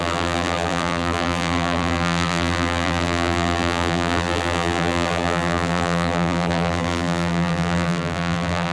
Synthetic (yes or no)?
yes